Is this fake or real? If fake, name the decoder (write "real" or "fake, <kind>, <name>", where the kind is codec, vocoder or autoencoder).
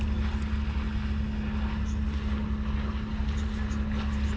real